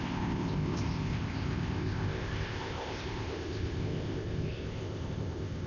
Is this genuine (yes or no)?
no